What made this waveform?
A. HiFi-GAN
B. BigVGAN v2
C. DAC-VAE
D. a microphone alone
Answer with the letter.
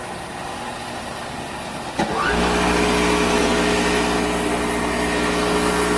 D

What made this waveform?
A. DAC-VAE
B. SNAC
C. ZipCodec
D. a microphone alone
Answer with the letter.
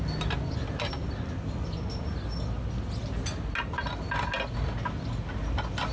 D